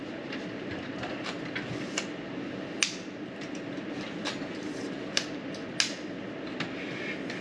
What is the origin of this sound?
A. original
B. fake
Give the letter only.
A